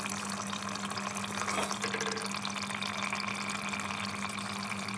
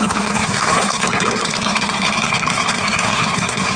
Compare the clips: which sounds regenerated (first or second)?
second